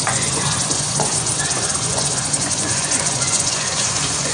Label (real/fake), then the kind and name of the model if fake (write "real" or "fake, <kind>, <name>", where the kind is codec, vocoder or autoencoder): fake, vocoder, Vocos